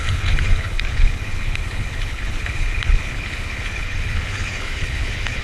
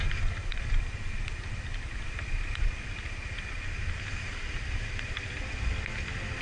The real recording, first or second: second